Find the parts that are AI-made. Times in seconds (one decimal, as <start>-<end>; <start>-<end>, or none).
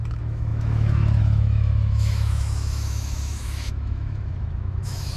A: 0.0-5.2